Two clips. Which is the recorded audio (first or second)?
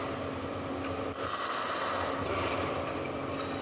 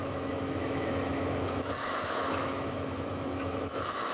first